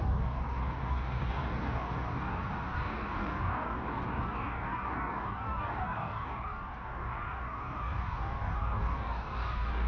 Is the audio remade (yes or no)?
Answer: yes